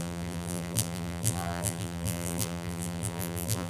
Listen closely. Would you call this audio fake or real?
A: fake